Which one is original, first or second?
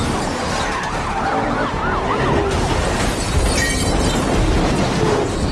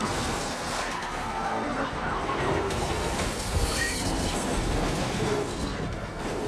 first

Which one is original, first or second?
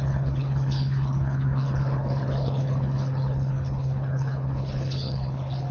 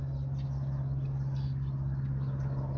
second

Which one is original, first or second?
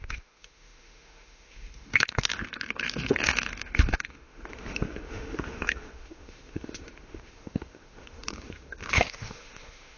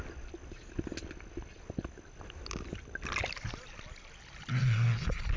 second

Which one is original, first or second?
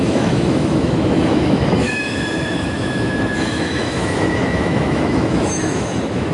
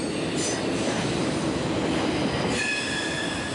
second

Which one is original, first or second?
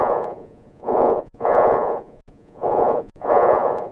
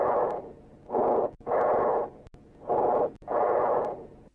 second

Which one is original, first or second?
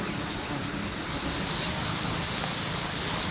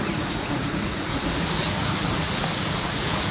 first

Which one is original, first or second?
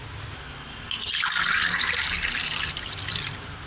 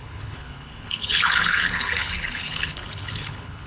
first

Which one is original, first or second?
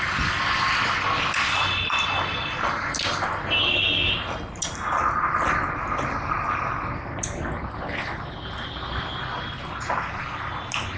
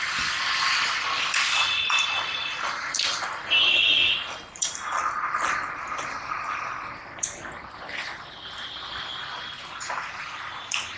first